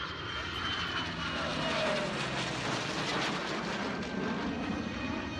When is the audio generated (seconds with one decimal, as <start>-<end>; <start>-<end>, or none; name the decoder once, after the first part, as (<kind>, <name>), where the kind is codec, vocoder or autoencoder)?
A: none